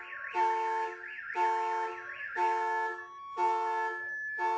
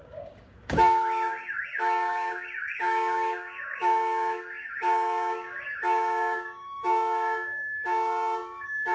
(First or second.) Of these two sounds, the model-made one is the second